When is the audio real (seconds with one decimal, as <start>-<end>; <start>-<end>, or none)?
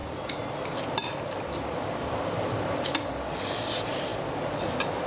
0.0-5.1